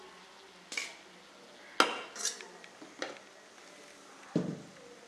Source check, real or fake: real